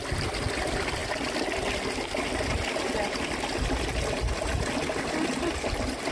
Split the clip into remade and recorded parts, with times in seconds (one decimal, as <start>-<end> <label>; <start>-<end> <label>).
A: 0.0-6.1 recorded